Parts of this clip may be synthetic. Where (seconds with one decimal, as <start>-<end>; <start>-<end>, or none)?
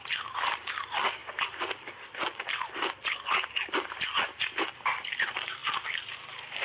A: 0.0-1.2; 4.5-6.6